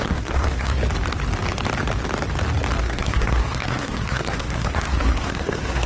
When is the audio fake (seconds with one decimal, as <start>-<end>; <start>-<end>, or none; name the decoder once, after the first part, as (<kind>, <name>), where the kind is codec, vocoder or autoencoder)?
0.0-0.8 (codec, SNAC); 2.8-5.9